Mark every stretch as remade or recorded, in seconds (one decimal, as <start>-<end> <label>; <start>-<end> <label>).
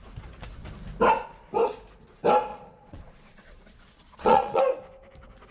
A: 0.0-2.5 recorded; 2.5-4.6 remade; 4.6-5.5 recorded